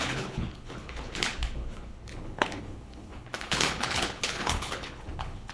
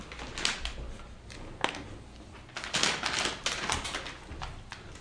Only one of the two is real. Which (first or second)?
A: second